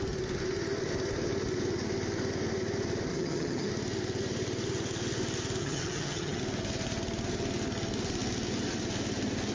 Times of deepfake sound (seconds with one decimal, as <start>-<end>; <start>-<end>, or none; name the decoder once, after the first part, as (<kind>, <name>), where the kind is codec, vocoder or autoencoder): 3.1-3.7 (vocoder, HiFi-GAN); 5.6-6.4

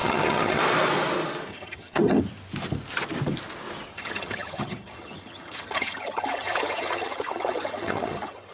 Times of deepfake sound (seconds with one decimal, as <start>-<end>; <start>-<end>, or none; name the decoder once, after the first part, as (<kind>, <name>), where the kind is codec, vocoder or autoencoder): 0.0-0.6 (vocoder, HiFi-GAN); 1.5-2.2; 3.9-8.5